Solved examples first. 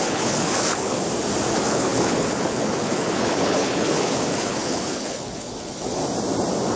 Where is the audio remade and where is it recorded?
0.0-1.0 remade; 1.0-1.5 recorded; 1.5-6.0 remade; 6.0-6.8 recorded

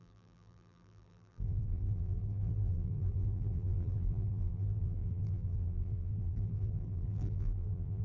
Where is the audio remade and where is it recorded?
0.0-8.0 remade

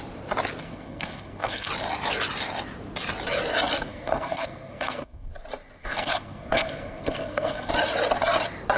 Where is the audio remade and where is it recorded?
0.0-0.6 recorded; 0.6-1.7 remade; 1.7-3.9 recorded; 3.9-5.3 remade; 5.3-5.8 recorded; 5.8-7.7 remade; 7.7-8.8 recorded

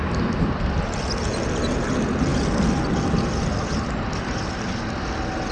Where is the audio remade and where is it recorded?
0.0-5.5 recorded

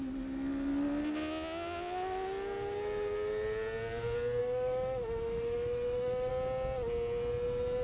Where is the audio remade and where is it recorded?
0.0-4.4 recorded; 4.4-6.3 remade; 6.3-7.8 recorded

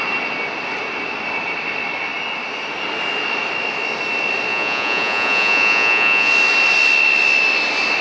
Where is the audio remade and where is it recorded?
0.0-4.5 recorded; 4.5-6.3 remade; 6.3-8.0 recorded

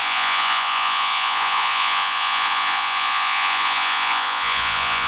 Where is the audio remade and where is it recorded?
0.0-5.1 remade